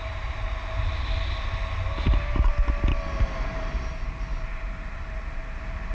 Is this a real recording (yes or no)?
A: yes